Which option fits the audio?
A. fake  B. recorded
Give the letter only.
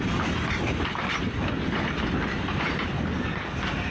B